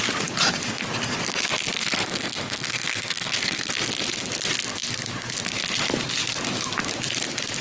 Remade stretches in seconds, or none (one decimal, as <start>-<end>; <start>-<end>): 1.8-3.7